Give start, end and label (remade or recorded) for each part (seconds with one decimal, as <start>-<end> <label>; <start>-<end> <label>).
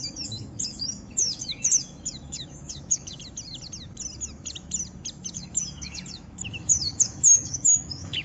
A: 0.0-3.2 remade; 3.2-5.3 recorded; 5.3-8.2 remade